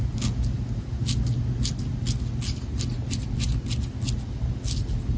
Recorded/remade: recorded